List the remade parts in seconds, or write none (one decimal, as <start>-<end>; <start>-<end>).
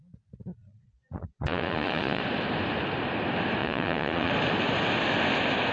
0.6-2.2; 3.6-4.3